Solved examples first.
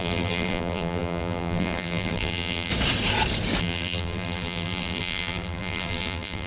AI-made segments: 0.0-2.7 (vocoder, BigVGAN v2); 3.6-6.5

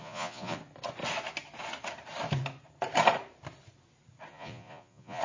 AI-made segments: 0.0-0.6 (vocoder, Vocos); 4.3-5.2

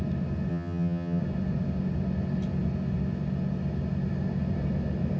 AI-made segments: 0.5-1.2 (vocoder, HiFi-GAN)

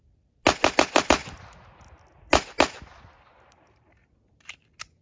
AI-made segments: none